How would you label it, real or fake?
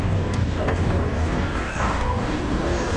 fake